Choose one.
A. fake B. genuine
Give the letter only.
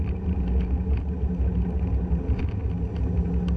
B